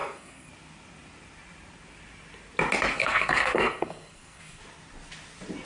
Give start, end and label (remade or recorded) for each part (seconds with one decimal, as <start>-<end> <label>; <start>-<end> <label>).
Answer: 0.0-0.5 remade; 0.5-2.9 recorded; 2.9-4.6 remade; 4.6-5.7 recorded